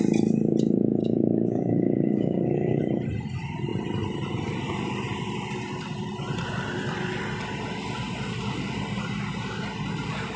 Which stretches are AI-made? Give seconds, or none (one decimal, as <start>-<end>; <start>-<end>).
1.0-2.8